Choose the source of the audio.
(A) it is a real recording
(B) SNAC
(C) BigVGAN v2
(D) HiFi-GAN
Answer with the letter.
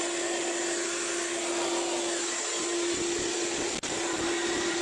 A